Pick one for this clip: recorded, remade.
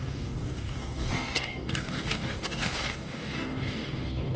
remade